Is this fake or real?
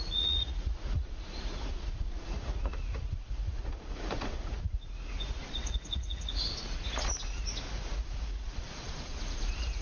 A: fake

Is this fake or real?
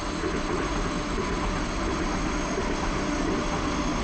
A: real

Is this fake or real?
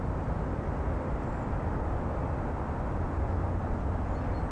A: real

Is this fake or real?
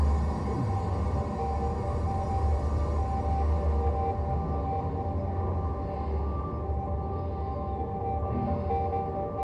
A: real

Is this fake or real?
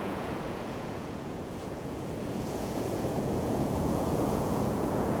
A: fake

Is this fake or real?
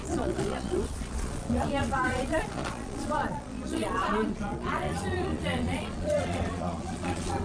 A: fake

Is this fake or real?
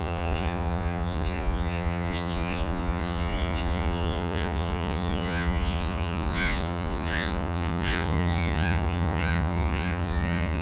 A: fake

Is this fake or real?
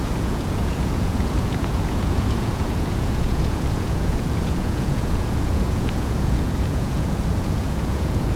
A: fake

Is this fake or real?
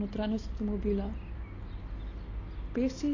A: real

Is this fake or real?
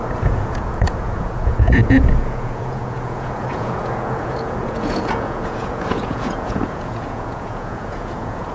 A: fake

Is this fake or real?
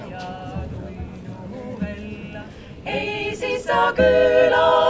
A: real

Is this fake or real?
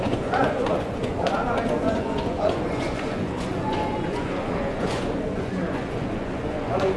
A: fake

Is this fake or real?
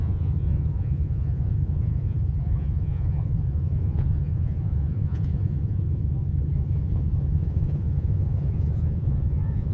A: fake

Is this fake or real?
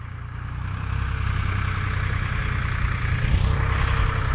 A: real